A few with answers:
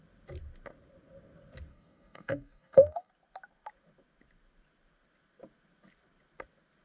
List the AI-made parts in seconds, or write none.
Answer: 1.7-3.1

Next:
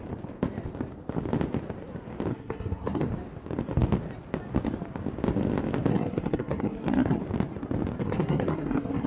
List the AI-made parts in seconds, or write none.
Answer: 2.3-3.1; 5.9-7.2; 8.0-9.1